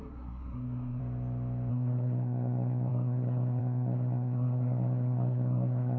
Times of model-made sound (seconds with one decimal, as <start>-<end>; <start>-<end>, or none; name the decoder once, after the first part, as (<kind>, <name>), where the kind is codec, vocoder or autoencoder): 0.0-1.0 (codec, SNAC); 1.7-6.0